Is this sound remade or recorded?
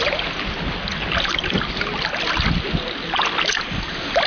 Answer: recorded